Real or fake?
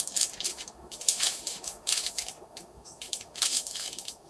fake